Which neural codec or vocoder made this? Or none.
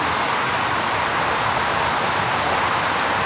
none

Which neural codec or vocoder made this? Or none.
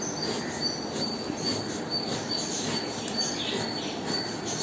none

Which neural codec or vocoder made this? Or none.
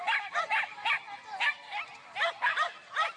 none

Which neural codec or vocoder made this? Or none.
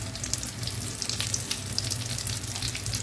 none